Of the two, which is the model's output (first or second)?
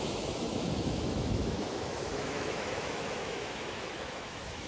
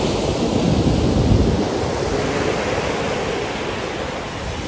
first